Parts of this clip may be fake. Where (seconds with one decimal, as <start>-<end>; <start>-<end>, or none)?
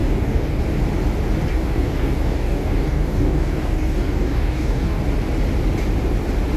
0.0-0.6; 1.5-5.0